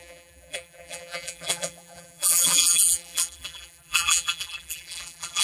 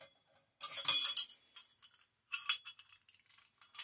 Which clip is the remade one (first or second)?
first